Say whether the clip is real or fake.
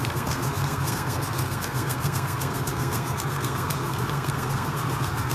fake